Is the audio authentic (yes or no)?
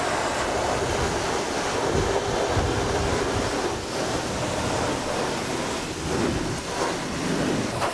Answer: yes